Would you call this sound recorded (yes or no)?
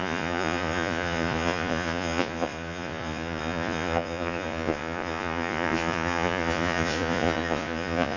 no